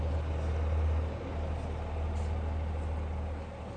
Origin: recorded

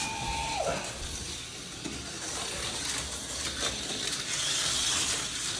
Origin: recorded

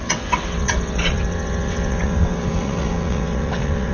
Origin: remade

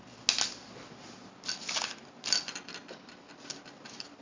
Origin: recorded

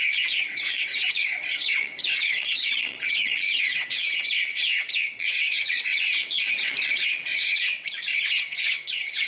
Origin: remade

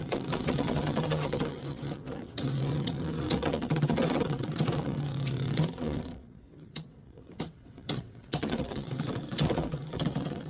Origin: remade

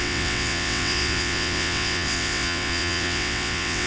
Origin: remade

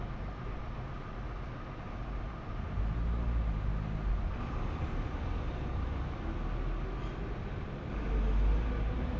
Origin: recorded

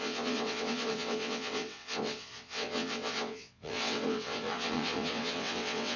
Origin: remade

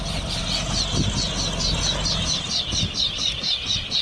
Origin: recorded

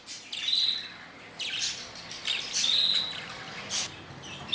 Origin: recorded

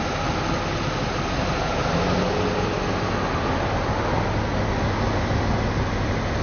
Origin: recorded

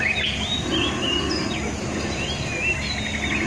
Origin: recorded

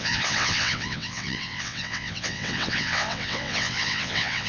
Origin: remade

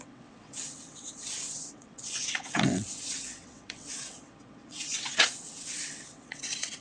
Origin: remade